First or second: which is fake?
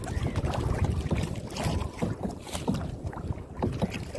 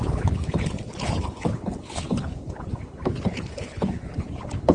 second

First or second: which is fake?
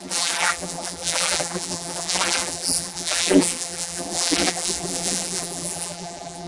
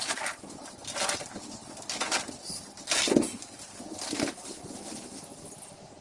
first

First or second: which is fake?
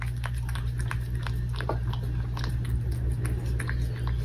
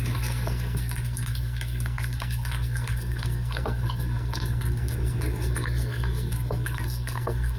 second